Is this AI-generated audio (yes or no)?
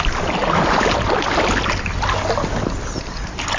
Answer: no